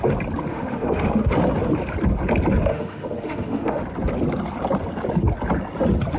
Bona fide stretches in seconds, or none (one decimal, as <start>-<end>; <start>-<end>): 0.0-0.5; 1.3-2.7; 3.8-6.2